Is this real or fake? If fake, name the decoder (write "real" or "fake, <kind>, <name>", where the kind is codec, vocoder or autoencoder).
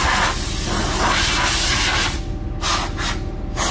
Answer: real